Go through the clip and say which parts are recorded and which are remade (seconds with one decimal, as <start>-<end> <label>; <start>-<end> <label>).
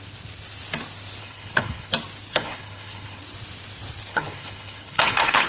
0.0-1.2 recorded; 1.2-1.9 remade; 1.9-2.3 recorded; 2.3-3.2 remade; 3.2-4.1 recorded; 4.1-5.5 remade